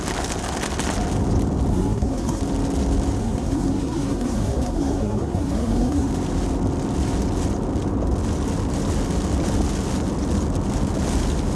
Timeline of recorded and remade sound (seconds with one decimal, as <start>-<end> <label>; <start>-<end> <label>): 0.0-1.7 recorded; 1.7-2.4 remade; 2.4-3.2 recorded; 3.2-6.1 remade; 6.1-11.6 recorded